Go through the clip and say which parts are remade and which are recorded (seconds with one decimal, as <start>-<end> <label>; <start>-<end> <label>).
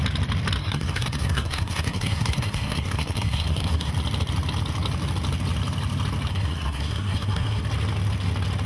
0.0-0.6 recorded; 0.6-3.9 remade; 3.9-6.3 recorded; 6.3-7.6 remade; 7.6-8.7 recorded